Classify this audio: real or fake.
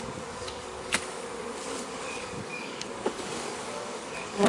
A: fake